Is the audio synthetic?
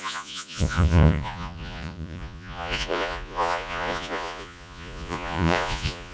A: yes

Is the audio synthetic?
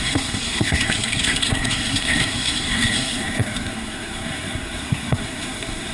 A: yes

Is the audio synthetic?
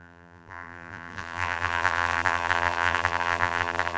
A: yes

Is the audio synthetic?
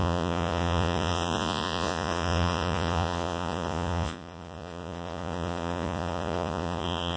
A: yes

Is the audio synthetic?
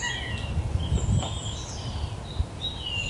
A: no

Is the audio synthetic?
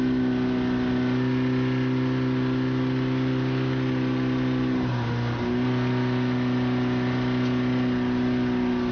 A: no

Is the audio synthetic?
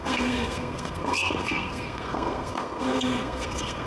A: yes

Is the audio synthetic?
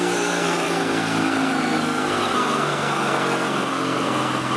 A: yes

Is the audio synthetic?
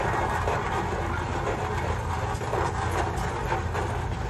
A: no